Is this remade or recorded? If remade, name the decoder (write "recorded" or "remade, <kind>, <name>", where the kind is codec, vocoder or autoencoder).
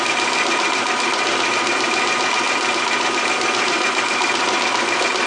recorded